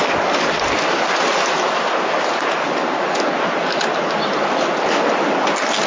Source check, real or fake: real